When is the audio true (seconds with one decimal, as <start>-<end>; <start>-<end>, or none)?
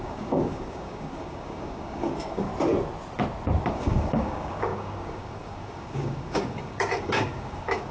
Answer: 2.5-3.7